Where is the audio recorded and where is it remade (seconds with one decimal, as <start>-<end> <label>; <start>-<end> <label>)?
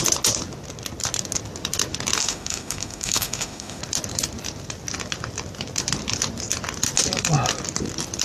0.0-2.2 recorded; 2.2-3.8 remade; 3.8-8.2 recorded